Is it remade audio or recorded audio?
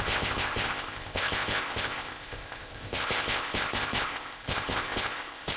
remade